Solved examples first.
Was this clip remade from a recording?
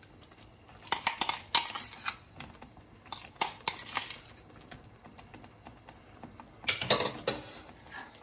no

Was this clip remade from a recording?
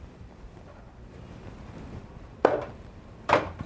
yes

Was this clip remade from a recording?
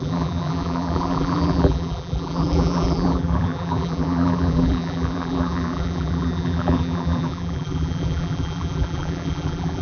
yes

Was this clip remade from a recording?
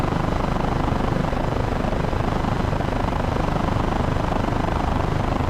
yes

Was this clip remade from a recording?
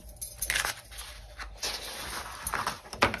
no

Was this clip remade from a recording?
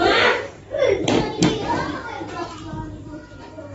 yes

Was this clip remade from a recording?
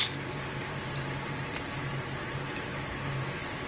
yes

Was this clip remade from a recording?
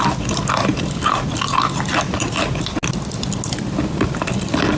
no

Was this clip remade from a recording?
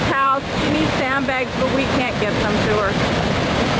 yes